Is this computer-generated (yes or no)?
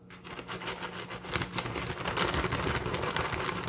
no